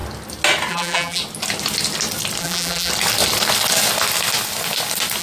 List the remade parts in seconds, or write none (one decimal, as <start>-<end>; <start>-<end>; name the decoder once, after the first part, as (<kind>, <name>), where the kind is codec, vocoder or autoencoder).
0.7-1.2 (vocoder, BigVGAN v2); 2.4-2.9